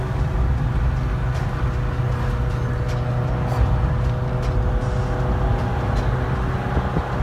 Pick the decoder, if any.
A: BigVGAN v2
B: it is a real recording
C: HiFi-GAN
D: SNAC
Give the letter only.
B